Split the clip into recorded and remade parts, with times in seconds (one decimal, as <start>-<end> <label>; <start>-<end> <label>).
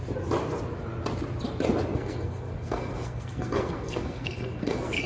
0.0-1.9 recorded; 1.9-5.1 remade